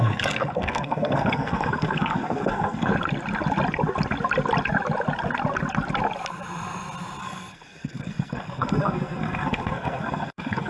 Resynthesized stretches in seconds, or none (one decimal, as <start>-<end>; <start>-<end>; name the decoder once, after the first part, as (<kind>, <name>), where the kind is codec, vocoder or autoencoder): 0.0-2.9 (codec, SNAC); 7.2-10.7